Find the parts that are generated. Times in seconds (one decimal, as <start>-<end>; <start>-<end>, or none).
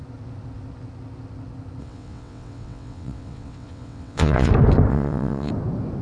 1.8-4.5; 4.9-5.5